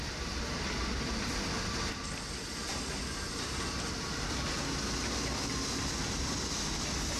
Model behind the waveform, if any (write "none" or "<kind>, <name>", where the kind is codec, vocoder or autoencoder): none